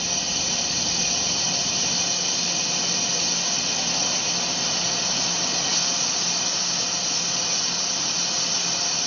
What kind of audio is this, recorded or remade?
recorded